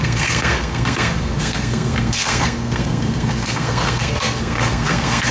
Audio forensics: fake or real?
fake